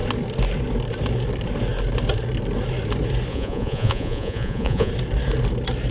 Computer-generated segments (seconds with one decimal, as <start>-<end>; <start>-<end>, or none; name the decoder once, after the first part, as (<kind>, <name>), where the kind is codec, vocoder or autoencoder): 3.3-4.9 (vocoder, Vocos)